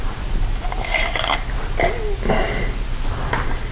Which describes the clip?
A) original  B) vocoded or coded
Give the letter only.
A